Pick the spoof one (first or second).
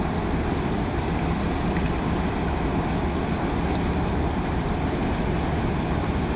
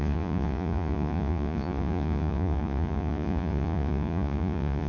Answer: second